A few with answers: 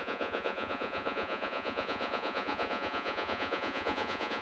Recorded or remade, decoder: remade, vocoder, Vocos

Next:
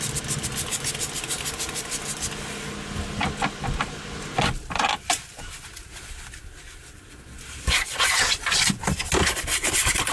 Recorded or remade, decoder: recorded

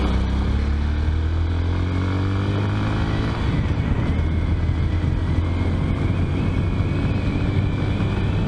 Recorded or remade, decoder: recorded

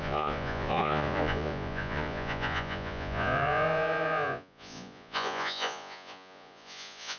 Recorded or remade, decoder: remade, vocoder, Vocos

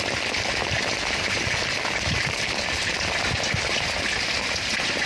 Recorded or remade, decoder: recorded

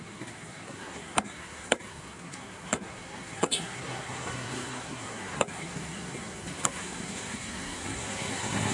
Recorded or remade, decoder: remade, codec, SNAC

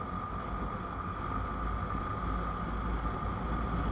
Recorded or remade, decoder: recorded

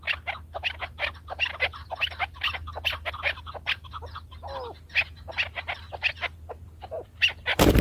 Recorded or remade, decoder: recorded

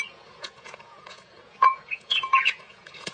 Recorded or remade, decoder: remade, vocoder, Vocos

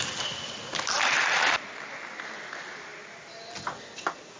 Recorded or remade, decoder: recorded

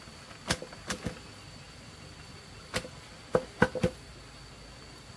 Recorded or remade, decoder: recorded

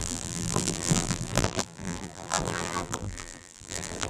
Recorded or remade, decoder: remade, vocoder, BigVGAN v2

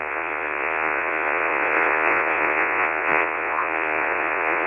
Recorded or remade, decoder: remade, vocoder, Vocos